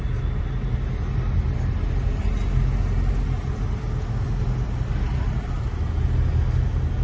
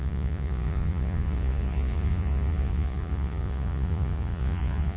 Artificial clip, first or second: second